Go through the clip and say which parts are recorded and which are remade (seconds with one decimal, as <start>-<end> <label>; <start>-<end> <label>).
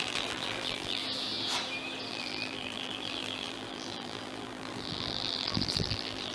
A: 0.0-1.0 remade; 1.0-2.1 recorded; 2.1-6.3 remade